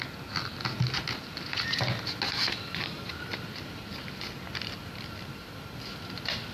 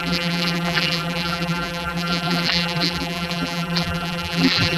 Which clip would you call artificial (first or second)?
second